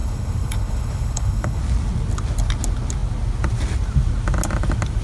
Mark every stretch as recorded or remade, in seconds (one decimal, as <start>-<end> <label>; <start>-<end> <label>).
0.0-1.6 remade; 1.6-5.0 recorded